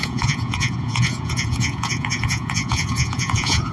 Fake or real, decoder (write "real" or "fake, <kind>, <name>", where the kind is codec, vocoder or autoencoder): fake, vocoder, Vocos